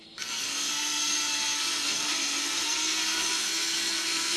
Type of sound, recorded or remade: remade